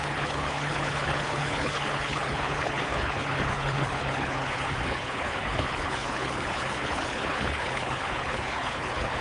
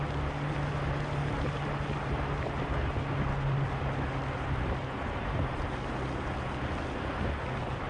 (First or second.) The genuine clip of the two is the second